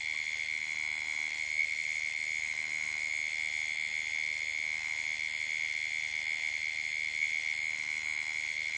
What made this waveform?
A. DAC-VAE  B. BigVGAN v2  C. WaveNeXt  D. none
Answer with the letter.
D